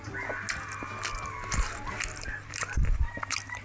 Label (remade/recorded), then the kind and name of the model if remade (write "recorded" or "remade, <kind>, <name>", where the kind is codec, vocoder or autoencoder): recorded